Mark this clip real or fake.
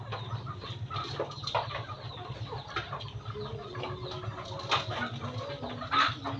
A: real